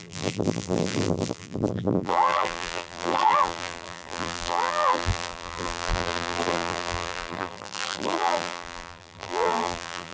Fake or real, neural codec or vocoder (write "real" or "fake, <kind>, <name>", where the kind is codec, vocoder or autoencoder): fake, vocoder, BigVGAN v2